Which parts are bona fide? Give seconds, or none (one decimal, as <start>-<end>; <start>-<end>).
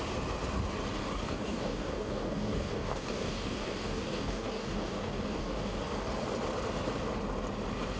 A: 0.0-1.0; 5.8-8.0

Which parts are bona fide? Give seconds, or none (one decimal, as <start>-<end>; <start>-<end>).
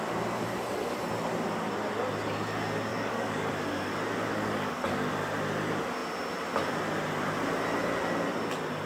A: 0.0-2.9; 3.5-4.3; 5.1-8.9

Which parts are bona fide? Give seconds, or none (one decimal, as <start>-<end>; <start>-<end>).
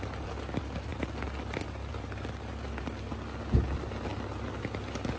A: 0.0-5.2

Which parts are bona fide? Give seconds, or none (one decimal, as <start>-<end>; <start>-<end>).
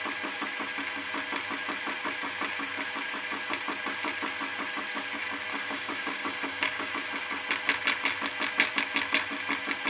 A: 0.0-5.5; 6.9-9.9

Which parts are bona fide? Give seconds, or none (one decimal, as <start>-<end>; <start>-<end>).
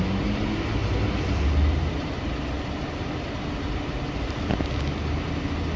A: 0.0-5.8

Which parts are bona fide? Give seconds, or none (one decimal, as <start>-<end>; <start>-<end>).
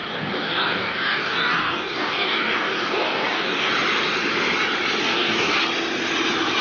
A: 3.7-5.0; 5.6-6.6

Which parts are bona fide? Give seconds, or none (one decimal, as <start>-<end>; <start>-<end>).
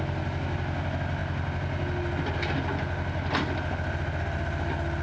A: 0.0-5.0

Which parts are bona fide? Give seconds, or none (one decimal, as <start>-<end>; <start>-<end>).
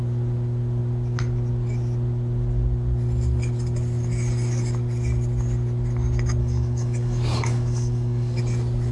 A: 0.0-6.4; 8.4-8.9